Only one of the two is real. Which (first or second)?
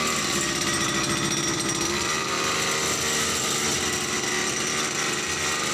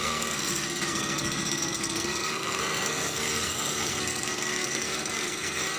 first